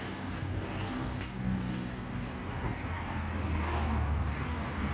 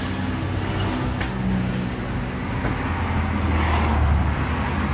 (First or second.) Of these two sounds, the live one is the second